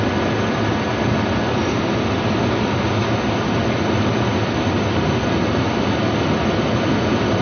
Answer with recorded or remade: recorded